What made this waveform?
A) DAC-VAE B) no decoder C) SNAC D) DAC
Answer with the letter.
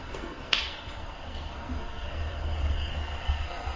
C